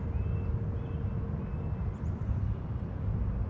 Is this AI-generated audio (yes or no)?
no